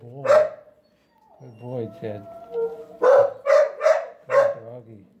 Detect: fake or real real